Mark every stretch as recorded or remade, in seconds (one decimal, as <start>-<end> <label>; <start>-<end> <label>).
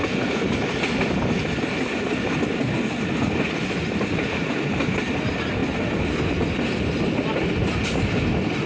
0.0-8.7 recorded